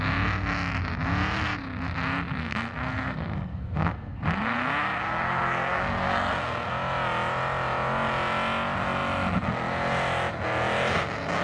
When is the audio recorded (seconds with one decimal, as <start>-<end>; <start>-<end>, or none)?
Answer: 0.0-2.4; 6.7-11.4